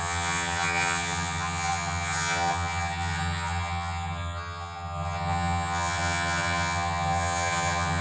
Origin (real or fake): fake